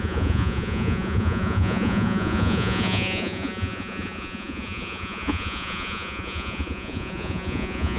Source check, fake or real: fake